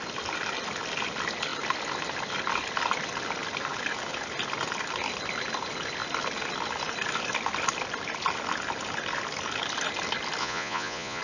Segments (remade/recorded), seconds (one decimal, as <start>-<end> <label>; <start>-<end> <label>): 0.0-10.4 recorded; 10.4-11.2 remade